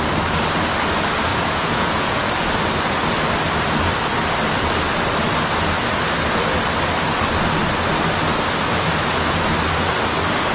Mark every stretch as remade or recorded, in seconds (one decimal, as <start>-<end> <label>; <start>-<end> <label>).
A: 0.0-1.3 recorded; 1.3-2.3 remade; 2.3-10.5 recorded